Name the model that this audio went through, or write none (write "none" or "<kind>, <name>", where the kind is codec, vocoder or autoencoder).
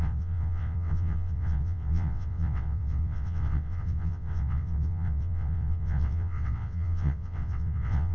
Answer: vocoder, WaveNeXt